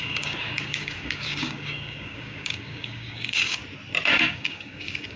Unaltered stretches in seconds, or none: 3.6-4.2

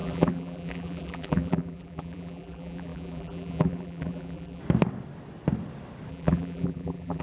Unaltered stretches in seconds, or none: 4.6-6.1